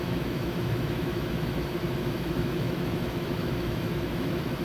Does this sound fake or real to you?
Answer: fake